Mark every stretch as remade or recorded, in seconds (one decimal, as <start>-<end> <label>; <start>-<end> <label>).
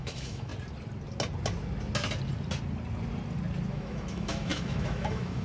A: 0.0-0.5 remade; 0.5-3.7 recorded; 3.7-5.4 remade